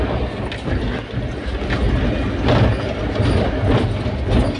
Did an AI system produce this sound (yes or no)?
no